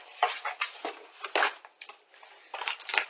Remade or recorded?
remade